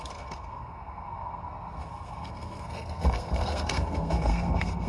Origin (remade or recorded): remade